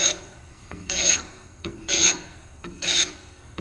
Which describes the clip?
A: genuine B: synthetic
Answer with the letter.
B